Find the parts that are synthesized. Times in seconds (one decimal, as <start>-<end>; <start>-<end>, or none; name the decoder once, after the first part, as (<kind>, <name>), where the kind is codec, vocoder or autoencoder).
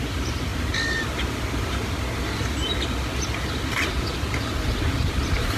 none